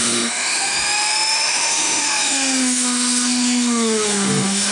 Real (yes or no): no